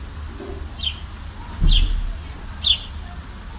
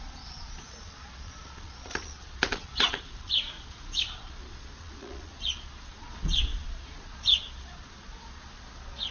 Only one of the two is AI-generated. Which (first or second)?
second